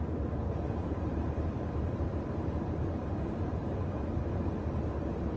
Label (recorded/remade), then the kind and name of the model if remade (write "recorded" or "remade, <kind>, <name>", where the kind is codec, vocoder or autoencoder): remade, vocoder, BigVGAN v2